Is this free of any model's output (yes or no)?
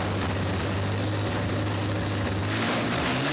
yes